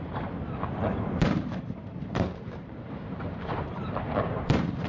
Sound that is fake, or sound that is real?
fake